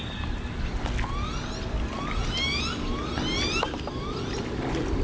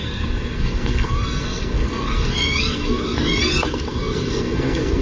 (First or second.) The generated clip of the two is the second